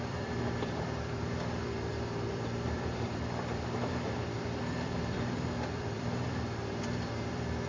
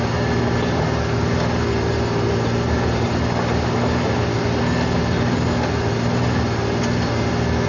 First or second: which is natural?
second